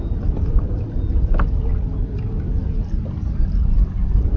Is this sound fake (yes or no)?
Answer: no